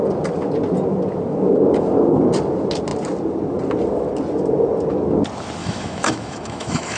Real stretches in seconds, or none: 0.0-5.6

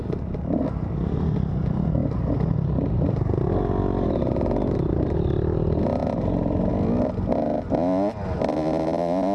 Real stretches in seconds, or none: 0.0-9.3

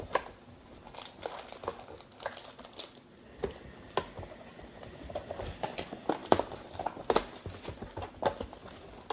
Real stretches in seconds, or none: 0.0-9.1

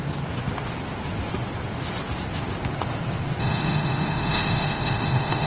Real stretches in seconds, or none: 0.0-3.4

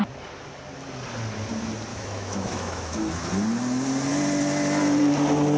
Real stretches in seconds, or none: 0.0-1.9; 3.3-5.6

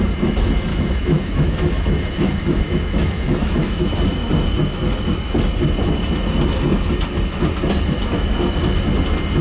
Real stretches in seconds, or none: 0.0-0.7; 3.9-9.4